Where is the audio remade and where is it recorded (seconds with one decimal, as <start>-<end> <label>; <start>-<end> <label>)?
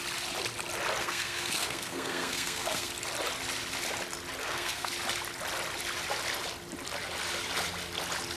0.0-1.0 recorded; 1.0-2.9 remade; 2.9-4.4 recorded; 4.4-4.9 remade; 4.9-8.4 recorded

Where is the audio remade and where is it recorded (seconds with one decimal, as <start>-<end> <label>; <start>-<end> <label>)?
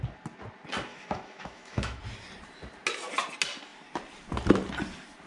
0.0-0.9 recorded; 0.9-2.0 remade; 2.0-5.3 recorded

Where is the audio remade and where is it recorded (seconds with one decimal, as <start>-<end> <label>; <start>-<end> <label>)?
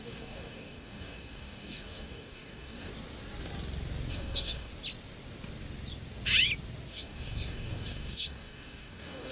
0.0-2.9 remade; 2.9-4.1 recorded; 4.1-4.7 remade; 4.7-6.9 recorded; 6.9-9.3 remade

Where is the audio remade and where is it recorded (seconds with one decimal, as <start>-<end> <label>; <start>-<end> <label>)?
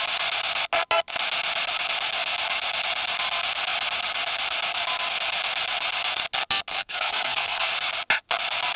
0.0-6.7 recorded; 6.7-7.7 remade; 7.7-8.8 recorded